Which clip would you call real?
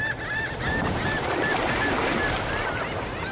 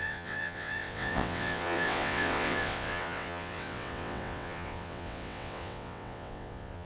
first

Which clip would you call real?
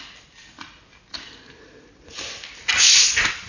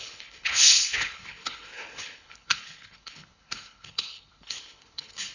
first